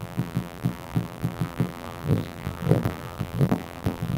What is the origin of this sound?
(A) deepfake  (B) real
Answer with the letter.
A